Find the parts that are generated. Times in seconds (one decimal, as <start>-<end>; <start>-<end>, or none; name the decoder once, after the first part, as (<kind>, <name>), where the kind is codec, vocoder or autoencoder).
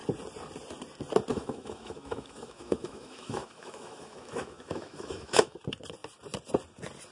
1.3-5.6 (autoencoder, DAC-VAE)